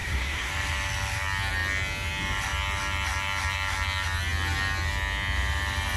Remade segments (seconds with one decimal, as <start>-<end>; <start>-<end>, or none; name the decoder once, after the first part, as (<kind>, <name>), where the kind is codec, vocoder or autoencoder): 0.0-0.5 (codec, SNAC)